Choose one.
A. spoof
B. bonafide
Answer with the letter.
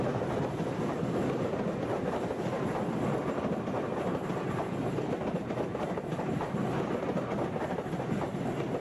B